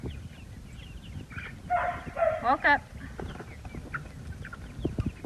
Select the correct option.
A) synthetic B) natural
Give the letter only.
B